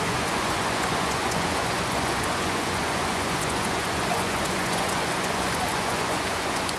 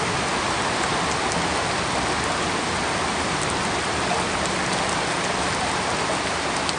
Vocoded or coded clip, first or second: first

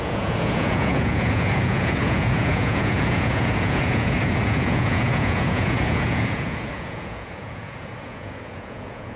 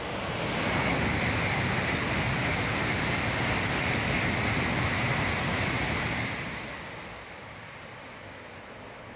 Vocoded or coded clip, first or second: first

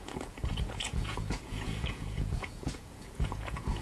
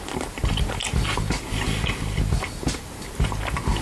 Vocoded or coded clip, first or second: first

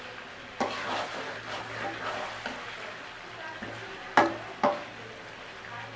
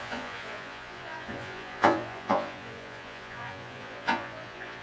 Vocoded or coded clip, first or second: second